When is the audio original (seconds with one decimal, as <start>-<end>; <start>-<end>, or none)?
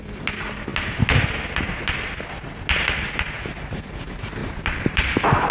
0.0-4.4